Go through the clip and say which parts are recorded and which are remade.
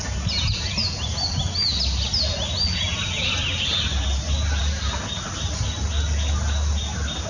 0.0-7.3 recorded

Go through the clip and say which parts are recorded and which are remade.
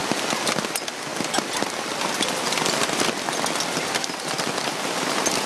0.0-5.5 recorded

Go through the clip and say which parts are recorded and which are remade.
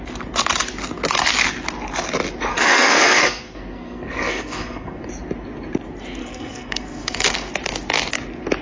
0.0-2.5 recorded; 2.5-5.0 remade; 5.0-6.2 recorded; 6.2-7.5 remade; 7.5-8.6 recorded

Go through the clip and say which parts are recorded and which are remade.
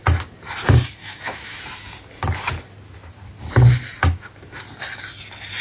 0.0-1.0 recorded; 1.0-1.6 remade; 1.6-5.6 recorded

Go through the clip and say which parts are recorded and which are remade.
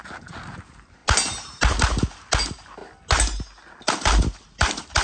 0.0-5.0 recorded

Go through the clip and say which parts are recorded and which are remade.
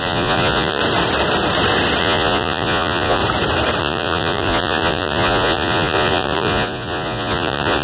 0.0-0.8 remade; 0.8-2.0 recorded; 2.0-3.2 remade; 3.2-3.8 recorded; 3.8-7.8 remade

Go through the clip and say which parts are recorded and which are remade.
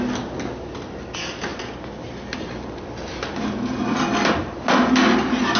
0.0-5.6 recorded